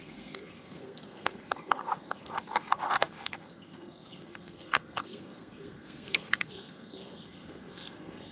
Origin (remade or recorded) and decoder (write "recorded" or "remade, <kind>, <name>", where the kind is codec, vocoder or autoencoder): remade, codec, SNAC